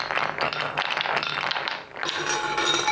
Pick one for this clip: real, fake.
real